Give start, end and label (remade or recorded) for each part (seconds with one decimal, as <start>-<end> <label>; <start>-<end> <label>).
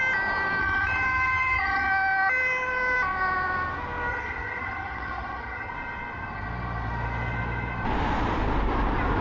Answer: 0.0-0.6 recorded; 0.6-1.9 remade; 1.9-4.1 recorded; 4.1-5.7 remade; 5.7-9.2 recorded